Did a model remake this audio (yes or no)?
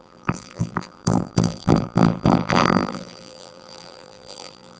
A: yes